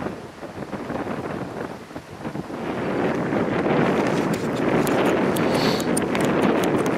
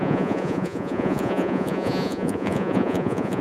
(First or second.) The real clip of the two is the first